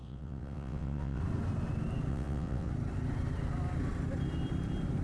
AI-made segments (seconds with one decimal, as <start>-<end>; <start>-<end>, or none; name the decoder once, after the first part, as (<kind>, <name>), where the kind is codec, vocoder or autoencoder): 0.0-1.2 (vocoder, WaveNeXt); 2.1-2.7